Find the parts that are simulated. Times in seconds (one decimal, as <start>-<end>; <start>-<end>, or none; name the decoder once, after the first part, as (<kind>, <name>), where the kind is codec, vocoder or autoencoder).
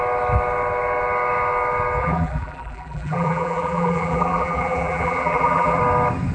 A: 2.0-5.8 (vocoder, BigVGAN v2)